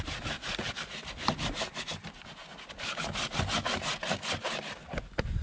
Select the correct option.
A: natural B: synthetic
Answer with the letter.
A